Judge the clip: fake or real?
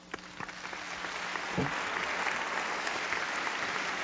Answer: real